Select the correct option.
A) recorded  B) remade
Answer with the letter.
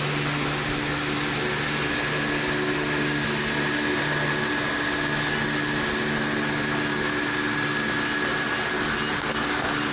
A